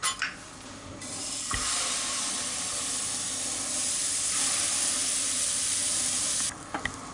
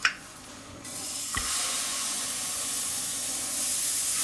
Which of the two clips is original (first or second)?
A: first